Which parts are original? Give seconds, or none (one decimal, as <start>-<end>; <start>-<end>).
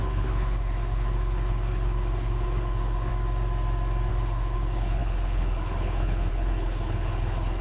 3.1-4.1